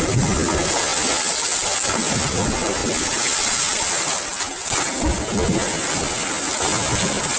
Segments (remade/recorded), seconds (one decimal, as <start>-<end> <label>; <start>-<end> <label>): 0.0-7.4 recorded